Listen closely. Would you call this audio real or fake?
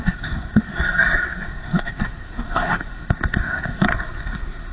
fake